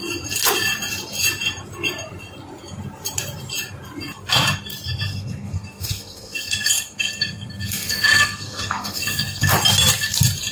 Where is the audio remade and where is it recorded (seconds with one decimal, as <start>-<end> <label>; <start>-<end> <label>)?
0.0-5.1 recorded; 5.1-9.5 remade; 9.5-10.5 recorded